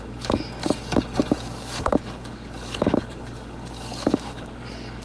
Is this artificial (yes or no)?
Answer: yes